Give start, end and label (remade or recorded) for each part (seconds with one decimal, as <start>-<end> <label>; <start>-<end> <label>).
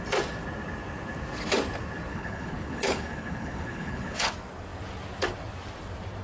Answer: 0.0-2.1 recorded; 2.1-4.3 remade; 4.3-6.2 recorded